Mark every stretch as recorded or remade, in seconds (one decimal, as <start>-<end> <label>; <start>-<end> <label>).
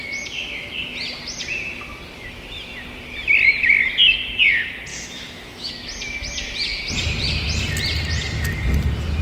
0.0-4.9 recorded; 4.9-5.7 remade; 5.7-9.2 recorded